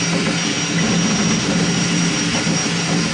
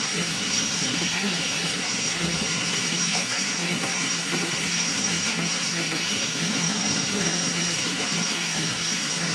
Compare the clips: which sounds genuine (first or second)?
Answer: first